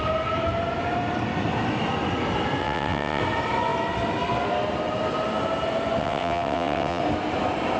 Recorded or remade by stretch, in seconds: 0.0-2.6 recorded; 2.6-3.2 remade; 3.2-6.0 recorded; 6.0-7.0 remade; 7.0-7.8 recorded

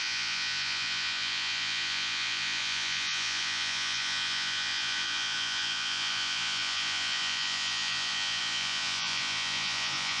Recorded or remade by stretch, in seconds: 0.0-10.2 remade

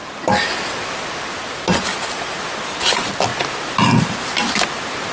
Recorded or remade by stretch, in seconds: 0.0-1.9 recorded; 1.9-2.4 remade; 2.4-5.1 recorded